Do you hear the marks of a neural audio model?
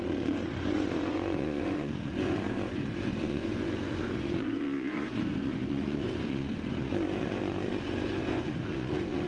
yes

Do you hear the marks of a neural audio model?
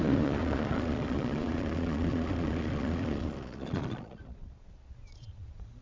yes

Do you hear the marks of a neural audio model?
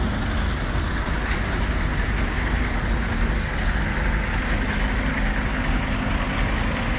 no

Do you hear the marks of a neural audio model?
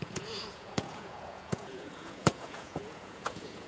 yes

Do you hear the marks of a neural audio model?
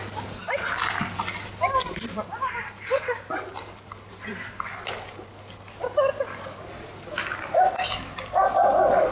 no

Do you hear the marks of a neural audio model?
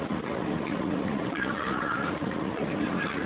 yes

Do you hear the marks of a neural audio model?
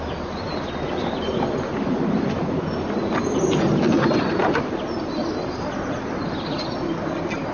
no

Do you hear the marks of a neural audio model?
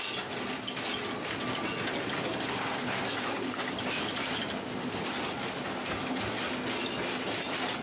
no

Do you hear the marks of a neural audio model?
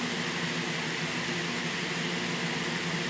no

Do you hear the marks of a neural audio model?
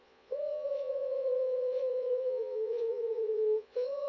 yes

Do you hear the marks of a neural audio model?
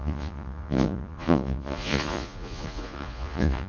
yes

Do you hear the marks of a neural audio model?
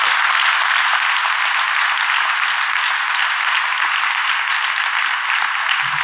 no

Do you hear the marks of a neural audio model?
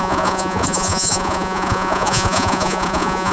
yes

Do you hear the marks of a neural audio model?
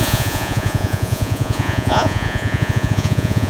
yes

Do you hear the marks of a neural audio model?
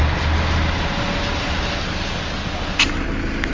no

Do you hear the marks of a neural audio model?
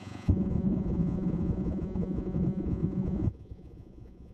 yes